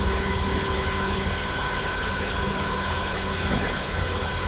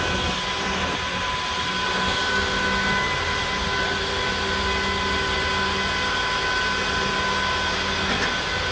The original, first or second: second